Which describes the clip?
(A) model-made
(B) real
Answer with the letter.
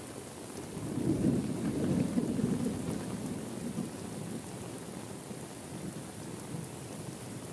B